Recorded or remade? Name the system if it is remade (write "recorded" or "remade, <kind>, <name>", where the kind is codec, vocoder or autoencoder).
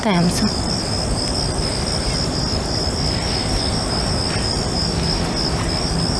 recorded